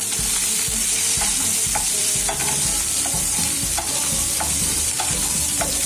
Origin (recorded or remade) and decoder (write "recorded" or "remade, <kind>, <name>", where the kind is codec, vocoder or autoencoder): remade, vocoder, BigVGAN v2